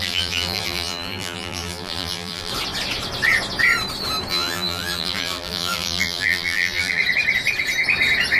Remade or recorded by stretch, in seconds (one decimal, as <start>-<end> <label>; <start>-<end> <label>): 0.0-2.5 remade; 2.5-4.3 recorded; 4.3-7.0 remade; 7.0-8.4 recorded